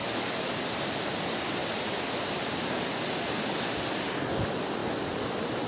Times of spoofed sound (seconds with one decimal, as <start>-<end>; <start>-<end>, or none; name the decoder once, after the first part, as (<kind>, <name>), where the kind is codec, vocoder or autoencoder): none